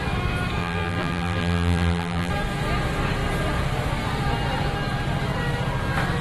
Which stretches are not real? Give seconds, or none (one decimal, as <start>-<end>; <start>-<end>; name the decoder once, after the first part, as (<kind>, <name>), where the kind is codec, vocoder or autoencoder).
0.6-2.3 (vocoder, BigVGAN v2)